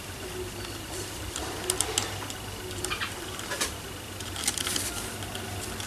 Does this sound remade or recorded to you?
recorded